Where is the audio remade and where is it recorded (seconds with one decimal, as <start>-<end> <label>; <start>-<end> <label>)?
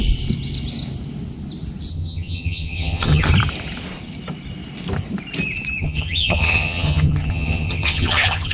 0.0-1.9 recorded; 1.9-3.3 remade; 3.3-5.8 recorded; 5.8-8.5 remade